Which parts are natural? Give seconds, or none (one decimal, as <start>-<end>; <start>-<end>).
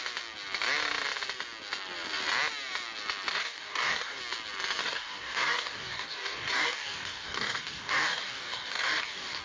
0.0-3.3; 4.2-4.8